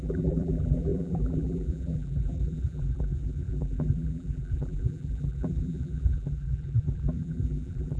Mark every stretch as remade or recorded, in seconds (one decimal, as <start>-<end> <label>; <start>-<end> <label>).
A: 0.0-8.0 remade